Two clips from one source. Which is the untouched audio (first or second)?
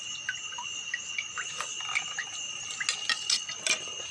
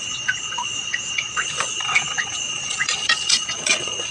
first